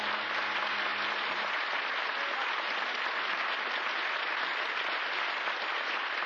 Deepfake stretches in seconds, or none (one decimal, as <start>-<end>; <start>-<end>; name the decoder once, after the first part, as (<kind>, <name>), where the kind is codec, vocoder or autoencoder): none